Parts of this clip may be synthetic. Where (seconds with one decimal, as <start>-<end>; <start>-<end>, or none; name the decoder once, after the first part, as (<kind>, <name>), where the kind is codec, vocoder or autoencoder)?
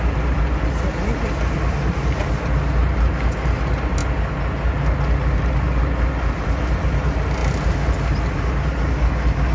none